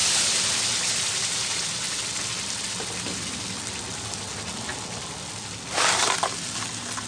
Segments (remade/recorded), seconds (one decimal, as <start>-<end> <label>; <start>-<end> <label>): 0.0-7.1 recorded